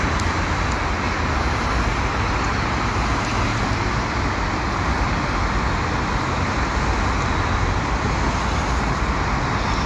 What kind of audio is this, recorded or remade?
recorded